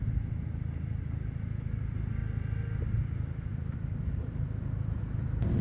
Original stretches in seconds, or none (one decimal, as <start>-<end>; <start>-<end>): 0.0-5.6